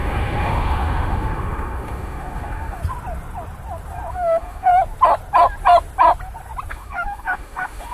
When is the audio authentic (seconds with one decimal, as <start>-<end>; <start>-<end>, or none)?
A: 2.8-4.1; 4.7-6.7